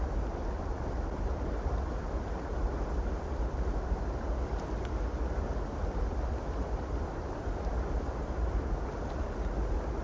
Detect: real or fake real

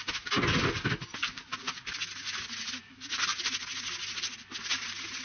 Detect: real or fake real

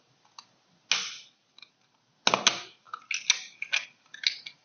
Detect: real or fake real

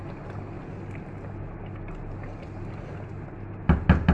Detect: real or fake real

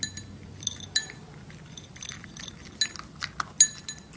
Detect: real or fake real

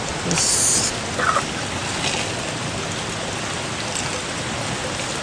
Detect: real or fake real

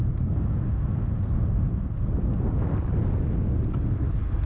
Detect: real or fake real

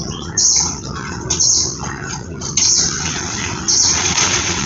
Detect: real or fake fake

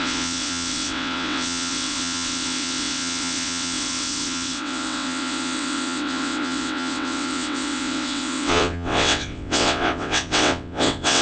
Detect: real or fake fake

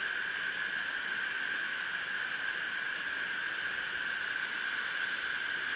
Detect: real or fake real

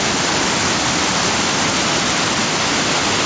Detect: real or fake real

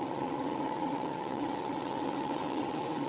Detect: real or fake fake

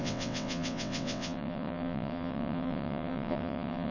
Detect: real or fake fake